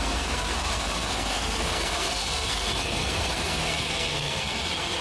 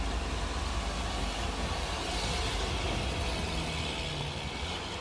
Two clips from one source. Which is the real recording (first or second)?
second